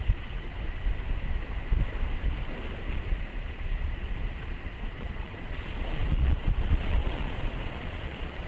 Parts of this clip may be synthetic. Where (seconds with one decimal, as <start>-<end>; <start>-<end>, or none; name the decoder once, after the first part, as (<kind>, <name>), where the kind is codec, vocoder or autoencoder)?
0.0-0.5 (vocoder, Vocos); 2.9-8.5